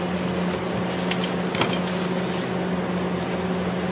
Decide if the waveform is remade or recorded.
recorded